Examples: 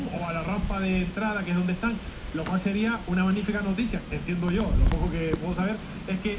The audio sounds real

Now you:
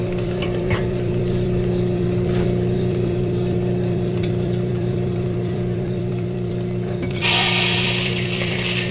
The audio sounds fake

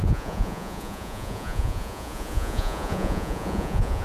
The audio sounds fake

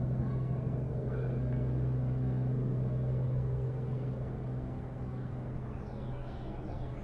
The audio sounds fake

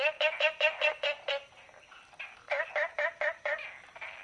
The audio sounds real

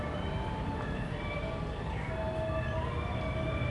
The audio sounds real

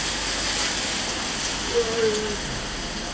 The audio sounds real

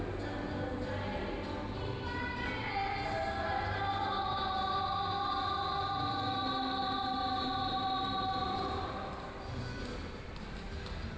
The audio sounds real